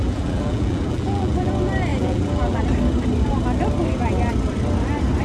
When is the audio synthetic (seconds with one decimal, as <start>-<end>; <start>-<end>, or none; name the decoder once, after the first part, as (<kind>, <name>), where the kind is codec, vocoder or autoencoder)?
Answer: 0.0-1.5 (vocoder, BigVGAN v2); 1.9-2.6